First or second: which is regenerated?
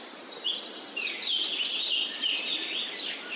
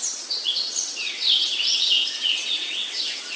second